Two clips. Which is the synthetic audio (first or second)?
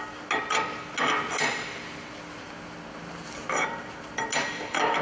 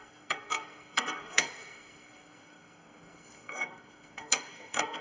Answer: second